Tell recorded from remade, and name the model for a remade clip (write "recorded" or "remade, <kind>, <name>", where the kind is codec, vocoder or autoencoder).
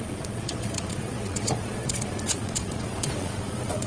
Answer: remade, vocoder, Vocos